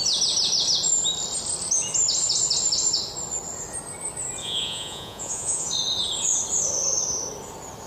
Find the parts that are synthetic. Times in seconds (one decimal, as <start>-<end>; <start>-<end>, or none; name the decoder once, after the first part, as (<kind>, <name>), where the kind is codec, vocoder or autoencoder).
4.4-5.7 (vocoder, Vocos)